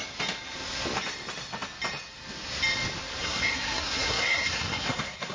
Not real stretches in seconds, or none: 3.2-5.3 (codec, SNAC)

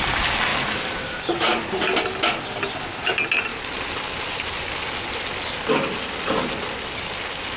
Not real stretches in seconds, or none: 0.5-1.8 (vocoder, BigVGAN v2)

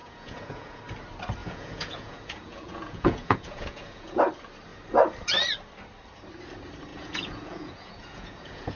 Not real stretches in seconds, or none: 0.0-0.8 (vocoder, Vocos); 1.4-4.2; 6.9-8.8

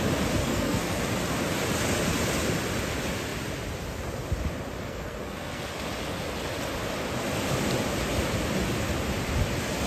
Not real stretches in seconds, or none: 0.4-1.0 (codec, SNAC); 4.8-5.6

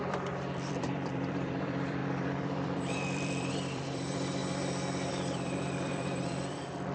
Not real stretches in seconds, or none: 0.0-4.4 (vocoder, BigVGAN v2); 5.1-6.9

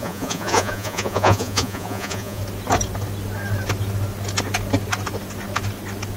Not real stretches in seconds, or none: 0.0-2.4 (vocoder, Vocos)

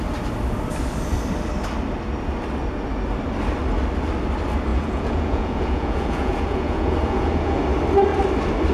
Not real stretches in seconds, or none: 4.7-7.6 (vocoder, Vocos)